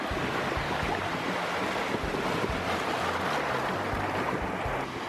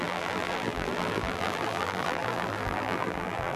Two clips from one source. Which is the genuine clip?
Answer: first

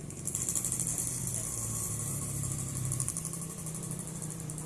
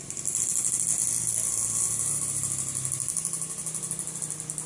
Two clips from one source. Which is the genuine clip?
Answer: second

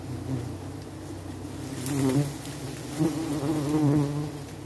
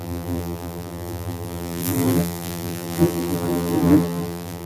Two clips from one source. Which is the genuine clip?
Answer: first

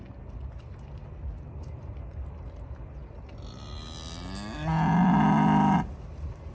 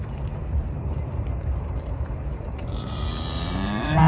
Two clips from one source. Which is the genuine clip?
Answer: first